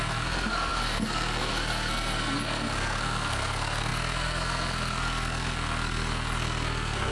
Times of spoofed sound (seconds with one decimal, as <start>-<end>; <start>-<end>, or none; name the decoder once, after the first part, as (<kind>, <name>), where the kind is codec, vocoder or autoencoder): 0.0-7.1 (codec, SNAC)

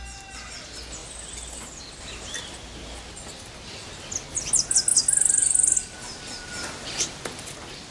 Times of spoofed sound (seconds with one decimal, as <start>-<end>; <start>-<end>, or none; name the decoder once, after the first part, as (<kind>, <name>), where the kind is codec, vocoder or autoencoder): 1.0-1.8 (vocoder, BigVGAN v2); 4.9-7.2